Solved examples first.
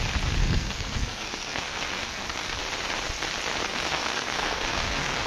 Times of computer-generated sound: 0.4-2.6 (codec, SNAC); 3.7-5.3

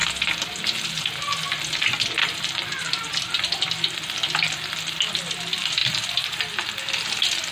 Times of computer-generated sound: 2.2-5.1 (vocoder, BigVGAN v2); 5.8-6.4

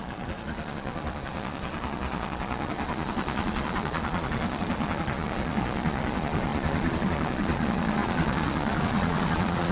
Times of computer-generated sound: 0.0-9.7 (vocoder, Vocos)

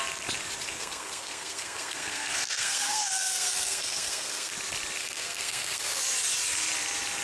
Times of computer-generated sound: 0.7-4.5 (codec, SNAC); 5.0-6.0

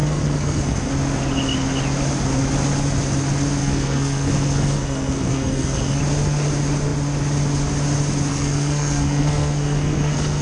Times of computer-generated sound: 0.0-0.9 (codec, SNAC); 3.6-6.0; 8.3-10.4

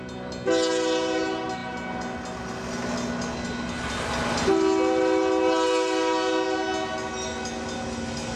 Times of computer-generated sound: none